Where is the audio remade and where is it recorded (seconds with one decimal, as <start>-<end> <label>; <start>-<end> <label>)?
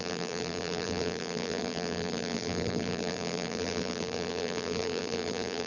0.0-5.7 remade